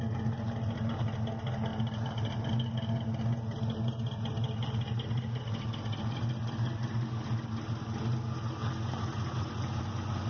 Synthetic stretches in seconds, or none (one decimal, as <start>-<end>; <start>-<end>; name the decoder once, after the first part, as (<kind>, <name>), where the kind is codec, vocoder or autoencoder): none